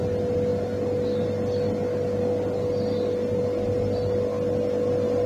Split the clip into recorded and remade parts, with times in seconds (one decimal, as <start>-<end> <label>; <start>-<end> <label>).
0.0-5.3 recorded